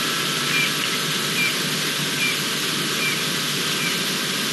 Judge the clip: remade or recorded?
recorded